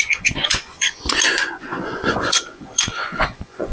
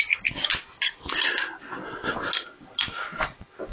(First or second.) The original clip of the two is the second